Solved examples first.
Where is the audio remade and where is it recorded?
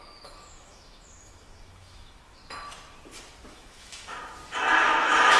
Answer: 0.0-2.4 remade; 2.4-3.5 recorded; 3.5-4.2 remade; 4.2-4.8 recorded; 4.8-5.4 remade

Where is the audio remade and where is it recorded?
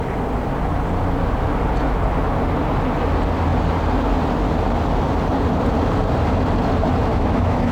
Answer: 0.0-7.1 recorded; 7.1-7.7 remade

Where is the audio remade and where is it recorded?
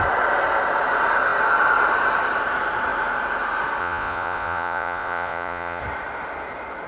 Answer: 0.0-3.8 recorded; 3.8-5.8 remade; 5.8-6.9 recorded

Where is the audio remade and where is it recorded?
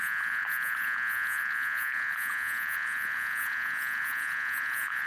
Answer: 0.0-5.1 remade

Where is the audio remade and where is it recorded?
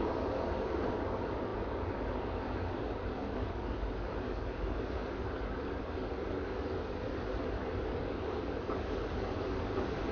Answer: 0.0-10.1 remade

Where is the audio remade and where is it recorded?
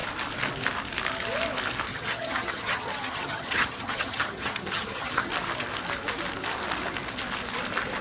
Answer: 0.0-1.9 recorded; 1.9-5.3 remade; 5.3-8.0 recorded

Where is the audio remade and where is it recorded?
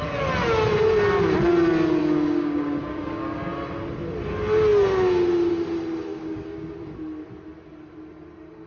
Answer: 0.0-2.0 recorded; 2.0-3.4 remade; 3.4-6.1 recorded; 6.1-6.7 remade; 6.7-8.7 recorded